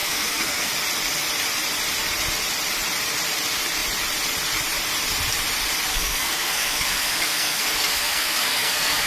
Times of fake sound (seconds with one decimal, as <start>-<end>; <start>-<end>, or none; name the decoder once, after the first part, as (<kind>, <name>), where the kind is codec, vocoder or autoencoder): 0.0-0.7 (codec, SNAC); 5.9-9.1